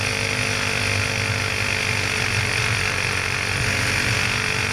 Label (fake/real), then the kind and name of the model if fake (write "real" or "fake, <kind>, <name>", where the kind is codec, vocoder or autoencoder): real